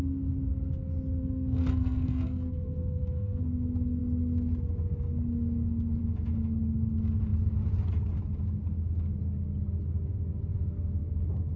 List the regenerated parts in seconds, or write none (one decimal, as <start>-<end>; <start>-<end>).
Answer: 1.2-3.4